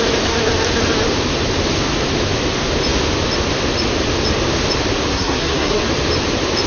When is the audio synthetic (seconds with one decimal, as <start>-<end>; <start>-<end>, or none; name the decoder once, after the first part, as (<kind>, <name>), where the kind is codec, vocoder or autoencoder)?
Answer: 5.1-5.8 (codec, SNAC)